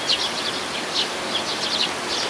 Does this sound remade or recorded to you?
recorded